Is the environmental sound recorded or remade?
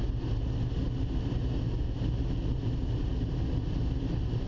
recorded